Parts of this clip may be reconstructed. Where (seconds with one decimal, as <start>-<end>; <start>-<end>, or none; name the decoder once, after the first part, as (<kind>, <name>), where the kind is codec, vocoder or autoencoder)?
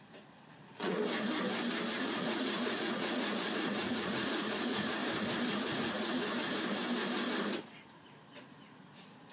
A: 0.0-1.0 (vocoder, Vocos); 2.0-5.0; 5.5-6.3; 7.6-9.3